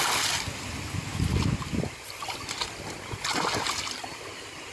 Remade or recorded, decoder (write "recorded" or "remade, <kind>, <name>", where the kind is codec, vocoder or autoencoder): recorded